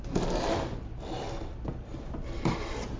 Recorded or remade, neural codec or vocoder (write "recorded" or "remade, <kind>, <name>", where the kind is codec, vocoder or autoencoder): recorded